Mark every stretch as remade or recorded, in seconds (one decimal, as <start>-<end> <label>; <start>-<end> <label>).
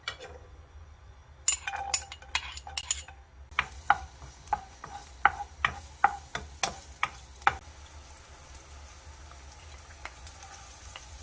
0.0-1.2 remade; 1.2-4.3 recorded; 4.3-5.0 remade; 5.0-9.9 recorded; 9.9-11.2 remade